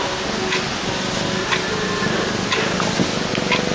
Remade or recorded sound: recorded